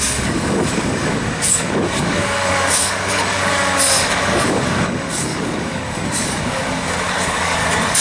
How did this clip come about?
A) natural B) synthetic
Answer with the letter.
B